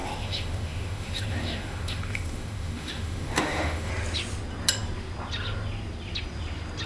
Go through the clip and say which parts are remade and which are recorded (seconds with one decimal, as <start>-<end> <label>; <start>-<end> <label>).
0.0-3.9 remade; 3.9-6.9 recorded